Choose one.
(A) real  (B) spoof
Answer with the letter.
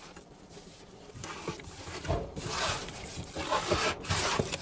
A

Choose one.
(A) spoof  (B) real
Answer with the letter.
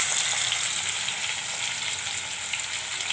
B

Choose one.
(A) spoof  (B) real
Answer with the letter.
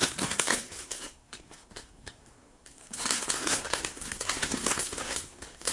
A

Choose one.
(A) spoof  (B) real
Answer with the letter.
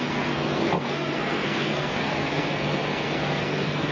A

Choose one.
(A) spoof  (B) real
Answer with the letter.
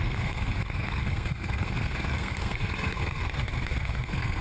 A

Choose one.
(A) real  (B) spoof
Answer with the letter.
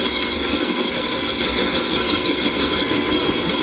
B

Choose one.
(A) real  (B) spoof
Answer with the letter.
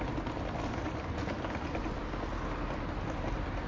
A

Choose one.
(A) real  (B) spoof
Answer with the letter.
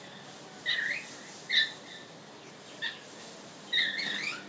A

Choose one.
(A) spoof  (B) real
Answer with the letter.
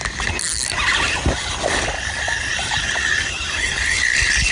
B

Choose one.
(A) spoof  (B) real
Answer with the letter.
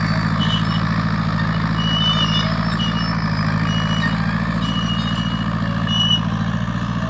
B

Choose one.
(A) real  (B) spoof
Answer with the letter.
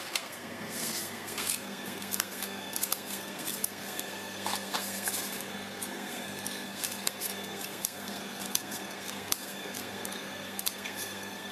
B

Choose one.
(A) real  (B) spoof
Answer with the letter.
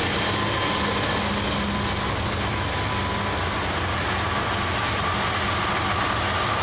A